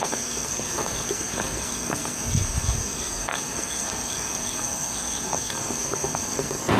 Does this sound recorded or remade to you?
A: remade